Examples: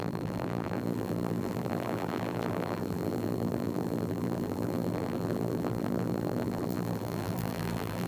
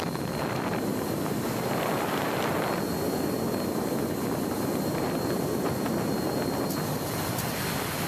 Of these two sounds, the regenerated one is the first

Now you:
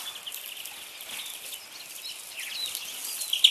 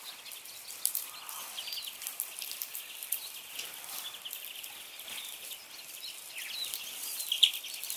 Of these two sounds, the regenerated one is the second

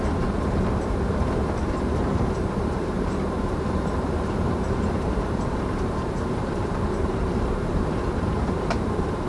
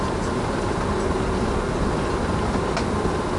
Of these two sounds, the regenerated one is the first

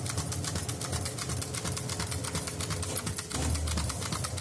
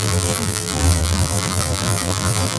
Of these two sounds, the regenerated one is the second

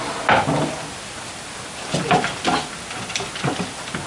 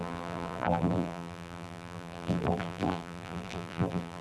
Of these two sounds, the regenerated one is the second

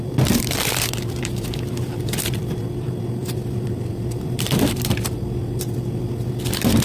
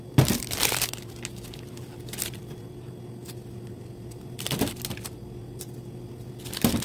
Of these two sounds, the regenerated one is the first